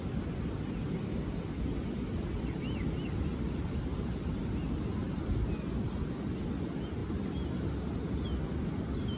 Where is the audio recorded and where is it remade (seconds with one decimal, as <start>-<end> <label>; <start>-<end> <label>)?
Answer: 0.0-5.0 recorded; 5.0-5.5 remade; 5.5-9.2 recorded